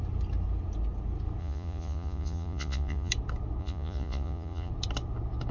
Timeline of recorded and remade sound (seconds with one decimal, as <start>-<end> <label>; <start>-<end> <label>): 0.0-1.4 recorded; 1.4-3.1 remade; 3.1-3.6 recorded; 3.6-4.7 remade; 4.7-5.5 recorded